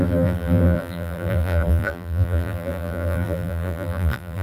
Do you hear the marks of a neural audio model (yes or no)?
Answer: yes